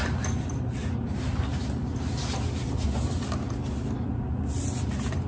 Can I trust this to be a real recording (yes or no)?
yes